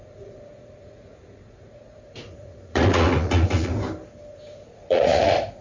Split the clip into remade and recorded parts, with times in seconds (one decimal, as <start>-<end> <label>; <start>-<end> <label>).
0.0-3.7 remade; 3.7-4.3 recorded; 4.3-5.6 remade